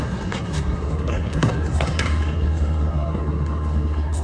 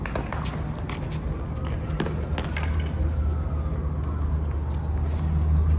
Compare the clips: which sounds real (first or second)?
second